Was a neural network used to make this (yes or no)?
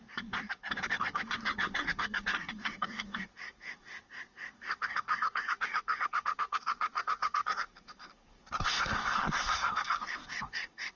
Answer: yes